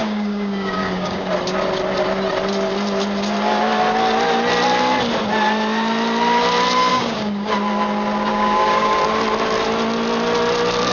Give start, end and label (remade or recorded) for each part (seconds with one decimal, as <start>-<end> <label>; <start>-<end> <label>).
0.0-1.3 remade; 1.3-6.9 recorded; 6.9-7.5 remade; 7.5-8.3 recorded; 8.3-9.0 remade; 9.0-10.9 recorded